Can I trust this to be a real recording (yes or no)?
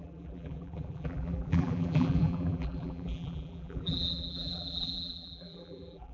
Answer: no